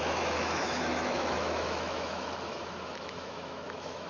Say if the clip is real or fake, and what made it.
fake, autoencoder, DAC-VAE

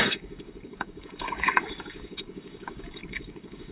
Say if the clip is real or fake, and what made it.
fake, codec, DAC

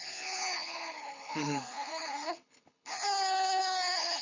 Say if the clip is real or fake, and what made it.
fake, codec, HILCodec